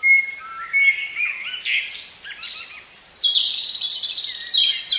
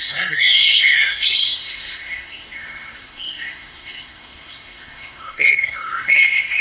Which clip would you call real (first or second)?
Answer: first